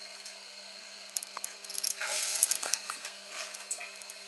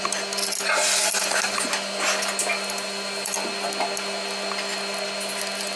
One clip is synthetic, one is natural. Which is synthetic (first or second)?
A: first